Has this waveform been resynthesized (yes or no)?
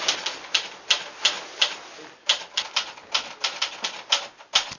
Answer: no